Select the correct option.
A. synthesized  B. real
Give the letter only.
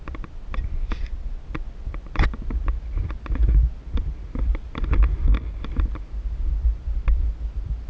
B